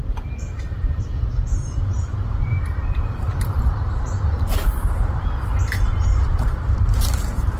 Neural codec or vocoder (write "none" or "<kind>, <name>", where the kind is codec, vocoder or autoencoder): vocoder, BigVGAN v2